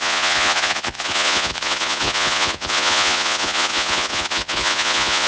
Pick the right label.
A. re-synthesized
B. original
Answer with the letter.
A